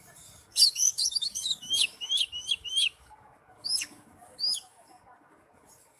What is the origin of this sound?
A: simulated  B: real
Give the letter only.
A